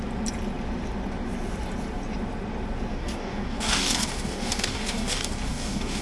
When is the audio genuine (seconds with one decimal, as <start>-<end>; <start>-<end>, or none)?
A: 0.0-2.9